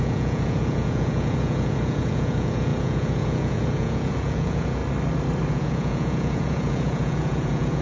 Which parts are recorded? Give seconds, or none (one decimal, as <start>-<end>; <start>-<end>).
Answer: 4.8-5.5